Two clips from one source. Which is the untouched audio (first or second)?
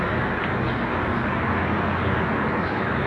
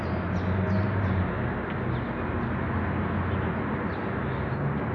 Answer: second